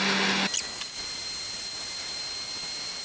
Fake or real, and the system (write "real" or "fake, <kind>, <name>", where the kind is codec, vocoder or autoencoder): real